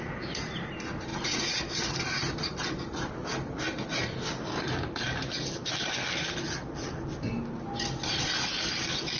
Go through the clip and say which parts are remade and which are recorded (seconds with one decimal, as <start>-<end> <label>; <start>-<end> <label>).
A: 0.0-1.1 recorded; 1.1-1.6 remade; 1.6-9.2 recorded